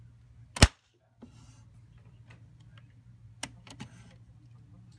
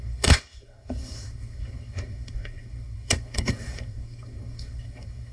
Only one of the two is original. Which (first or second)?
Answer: first